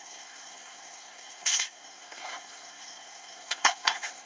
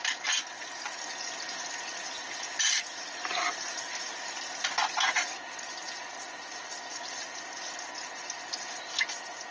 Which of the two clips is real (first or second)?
second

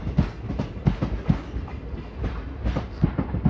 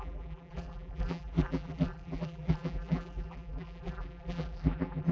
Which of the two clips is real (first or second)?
first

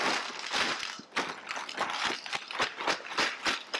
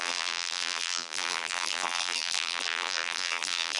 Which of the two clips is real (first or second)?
first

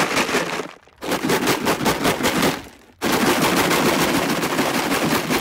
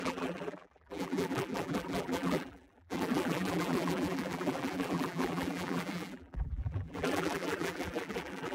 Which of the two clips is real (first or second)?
first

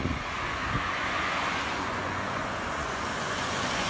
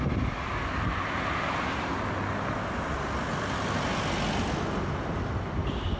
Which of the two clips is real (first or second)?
second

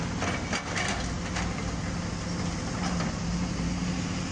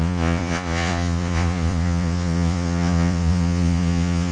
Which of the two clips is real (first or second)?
first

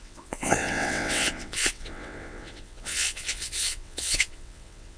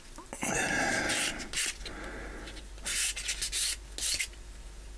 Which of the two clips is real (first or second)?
second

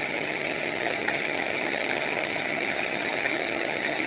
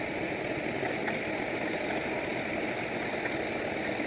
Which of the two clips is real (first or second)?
second